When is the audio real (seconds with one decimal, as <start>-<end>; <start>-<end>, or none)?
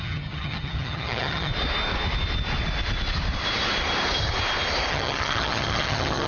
1.5-4.9